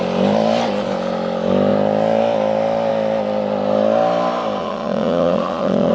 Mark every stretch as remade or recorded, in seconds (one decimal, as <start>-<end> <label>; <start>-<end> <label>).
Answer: 0.0-4.6 recorded; 4.6-5.9 remade